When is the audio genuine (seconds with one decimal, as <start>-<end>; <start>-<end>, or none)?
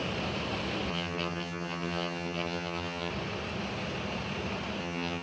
0.0-0.9; 3.1-4.8